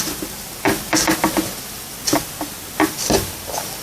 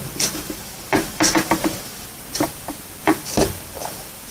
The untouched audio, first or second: first